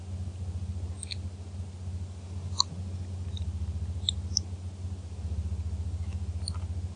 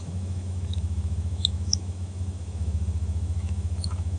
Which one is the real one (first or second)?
first